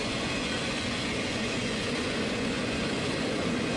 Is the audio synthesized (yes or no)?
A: yes